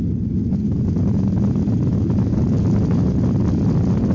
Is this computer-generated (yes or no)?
no